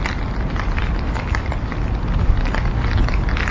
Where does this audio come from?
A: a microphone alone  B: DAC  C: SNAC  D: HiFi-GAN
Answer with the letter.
A